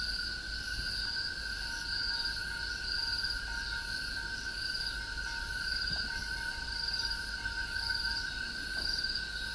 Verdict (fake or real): real